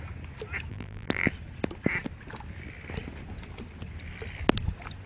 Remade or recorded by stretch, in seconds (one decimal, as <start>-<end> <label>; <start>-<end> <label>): 0.0-0.7 recorded; 0.7-1.3 remade; 1.3-5.1 recorded